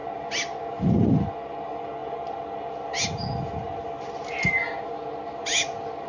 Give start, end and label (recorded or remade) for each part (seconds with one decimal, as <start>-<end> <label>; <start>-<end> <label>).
0.0-6.1 recorded